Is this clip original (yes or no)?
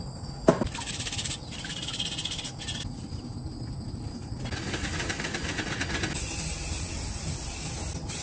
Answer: yes